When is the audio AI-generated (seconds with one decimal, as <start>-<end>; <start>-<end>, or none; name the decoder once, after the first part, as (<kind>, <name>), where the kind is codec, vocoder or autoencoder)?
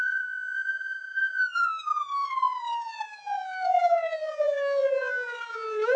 0.0-6.0 (vocoder, Vocos)